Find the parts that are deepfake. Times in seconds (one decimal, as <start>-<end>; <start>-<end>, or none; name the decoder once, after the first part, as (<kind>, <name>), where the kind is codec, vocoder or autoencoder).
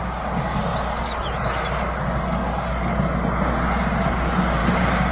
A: none